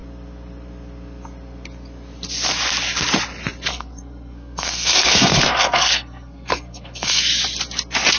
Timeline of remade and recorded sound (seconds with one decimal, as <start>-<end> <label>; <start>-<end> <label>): 0.0-3.7 recorded; 3.7-7.2 remade; 7.2-8.2 recorded